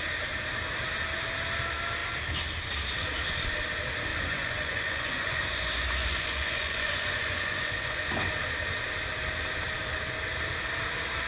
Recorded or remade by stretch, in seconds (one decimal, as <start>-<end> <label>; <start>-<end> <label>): 0.0-4.1 recorded; 4.1-8.3 remade; 8.3-11.3 recorded

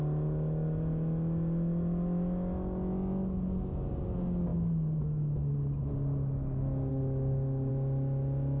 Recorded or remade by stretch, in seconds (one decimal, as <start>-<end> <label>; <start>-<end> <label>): 0.0-6.9 recorded; 6.9-7.7 remade; 7.7-8.6 recorded

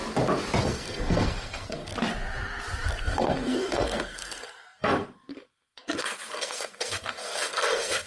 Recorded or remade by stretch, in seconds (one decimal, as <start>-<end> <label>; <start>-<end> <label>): 0.0-0.6 recorded; 0.6-1.9 remade; 1.9-3.0 recorded; 3.0-8.1 remade

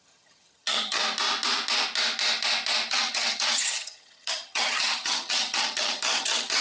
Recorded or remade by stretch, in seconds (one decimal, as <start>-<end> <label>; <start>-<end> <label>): 0.0-1.0 remade; 1.0-2.9 recorded; 2.9-6.6 remade

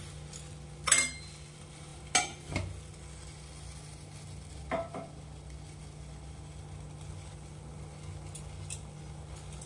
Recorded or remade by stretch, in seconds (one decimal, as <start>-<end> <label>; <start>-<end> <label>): 0.0-9.7 recorded